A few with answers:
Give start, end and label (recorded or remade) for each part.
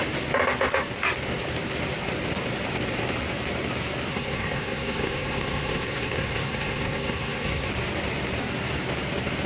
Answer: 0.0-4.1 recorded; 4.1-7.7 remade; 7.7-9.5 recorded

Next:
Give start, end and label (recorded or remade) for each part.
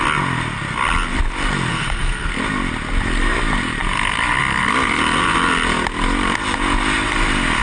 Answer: 0.0-1.7 recorded; 1.7-2.3 remade; 2.3-7.6 recorded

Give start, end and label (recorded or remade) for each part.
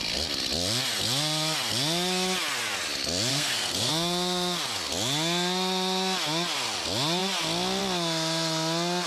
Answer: 0.0-3.3 recorded; 3.3-3.9 remade; 3.9-9.1 recorded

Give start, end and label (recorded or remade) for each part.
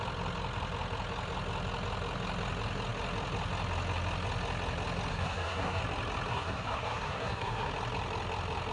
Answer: 0.0-5.1 recorded; 5.1-5.8 remade; 5.8-6.3 recorded; 6.3-7.7 remade; 7.7-8.7 recorded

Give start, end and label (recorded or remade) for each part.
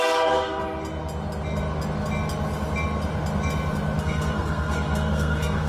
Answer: 0.0-0.6 remade; 0.6-4.0 recorded; 4.0-5.7 remade